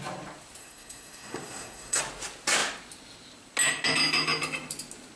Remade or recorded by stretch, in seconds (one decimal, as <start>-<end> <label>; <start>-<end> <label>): 0.0-0.6 recorded; 0.6-2.0 remade; 2.0-5.2 recorded